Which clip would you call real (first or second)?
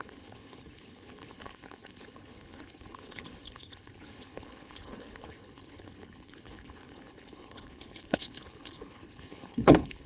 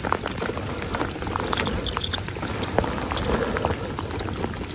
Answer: second